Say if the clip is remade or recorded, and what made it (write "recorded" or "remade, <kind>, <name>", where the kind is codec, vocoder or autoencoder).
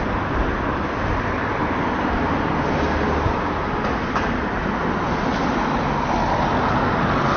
recorded